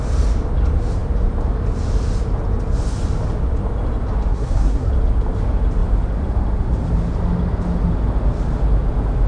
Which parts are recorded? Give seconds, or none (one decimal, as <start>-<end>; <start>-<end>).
0.0-4.3; 4.9-9.3

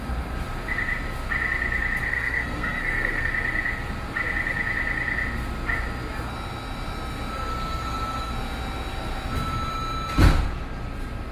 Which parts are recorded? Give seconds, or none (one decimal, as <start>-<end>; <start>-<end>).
0.0-2.0; 3.3-7.5; 8.3-11.3

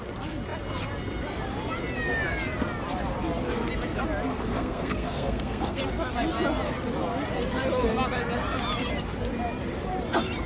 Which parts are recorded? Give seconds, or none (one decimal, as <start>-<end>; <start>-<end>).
0.0-4.3; 5.8-10.5

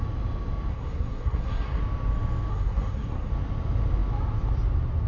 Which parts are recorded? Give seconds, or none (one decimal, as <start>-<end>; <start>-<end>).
0.0-0.7; 1.8-2.5; 3.3-5.1

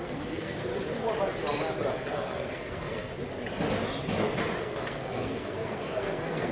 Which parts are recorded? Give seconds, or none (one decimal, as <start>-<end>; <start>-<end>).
0.7-1.9; 3.1-4.6

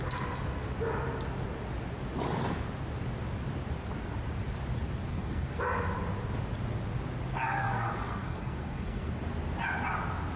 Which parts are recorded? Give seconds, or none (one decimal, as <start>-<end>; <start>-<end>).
0.0-5.1; 5.6-7.3; 9.2-10.4

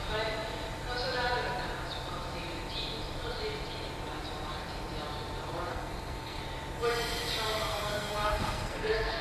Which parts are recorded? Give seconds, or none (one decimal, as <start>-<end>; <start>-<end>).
0.0-5.7; 6.4-7.7

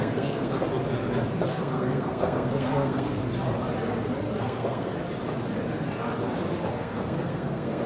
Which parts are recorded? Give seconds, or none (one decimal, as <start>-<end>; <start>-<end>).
0.6-1.5; 3.2-4.4; 4.9-6.7